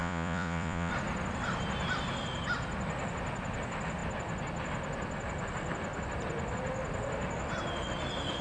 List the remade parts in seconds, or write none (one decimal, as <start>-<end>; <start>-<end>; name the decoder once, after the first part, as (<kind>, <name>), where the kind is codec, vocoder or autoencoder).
0.0-0.9 (vocoder, Vocos)